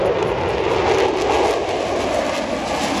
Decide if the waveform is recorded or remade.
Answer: recorded